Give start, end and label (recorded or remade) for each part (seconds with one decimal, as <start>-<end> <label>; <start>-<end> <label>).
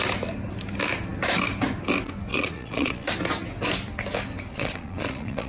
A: 0.0-2.3 recorded; 2.3-3.1 remade; 3.1-4.5 recorded; 4.5-5.5 remade